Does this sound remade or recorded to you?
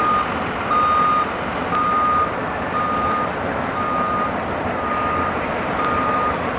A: recorded